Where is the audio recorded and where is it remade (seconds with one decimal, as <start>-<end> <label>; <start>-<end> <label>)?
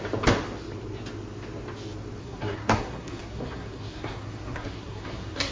0.0-2.2 recorded; 2.2-5.5 remade